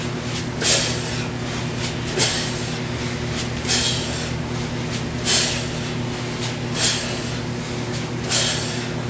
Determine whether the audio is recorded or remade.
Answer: recorded